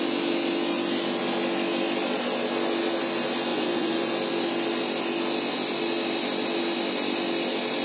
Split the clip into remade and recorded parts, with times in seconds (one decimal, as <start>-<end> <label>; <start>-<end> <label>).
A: 0.0-3.5 recorded; 3.5-4.1 remade; 4.1-7.8 recorded